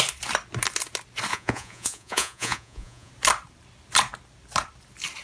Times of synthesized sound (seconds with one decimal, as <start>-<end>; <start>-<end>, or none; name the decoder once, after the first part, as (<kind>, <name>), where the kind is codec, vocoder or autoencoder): 1.3-3.1 (vocoder, Vocos)